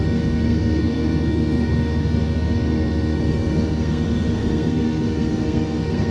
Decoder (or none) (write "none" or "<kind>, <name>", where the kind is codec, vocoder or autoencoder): codec, SNAC